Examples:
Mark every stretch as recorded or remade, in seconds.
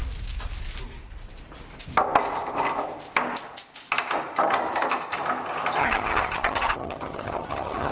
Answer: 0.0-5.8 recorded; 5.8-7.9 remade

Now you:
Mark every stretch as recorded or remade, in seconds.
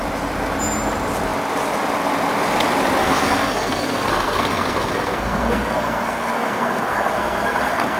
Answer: 0.0-3.0 recorded; 3.0-8.0 remade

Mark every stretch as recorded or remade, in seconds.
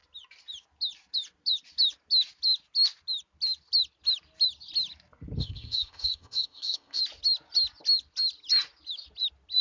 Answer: 0.0-5.4 recorded; 5.4-7.0 remade; 7.0-9.6 recorded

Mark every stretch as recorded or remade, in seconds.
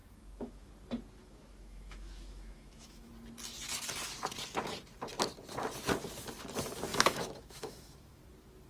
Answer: 0.0-0.7 remade; 0.7-1.2 recorded; 1.2-3.1 remade; 3.1-6.9 recorded; 6.9-8.2 remade; 8.2-8.7 recorded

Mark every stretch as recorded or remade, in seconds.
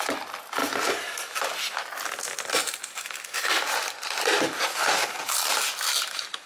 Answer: 0.0-4.7 recorded; 4.7-5.3 remade; 5.3-6.5 recorded